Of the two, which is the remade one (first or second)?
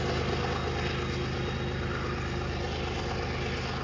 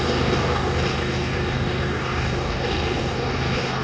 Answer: second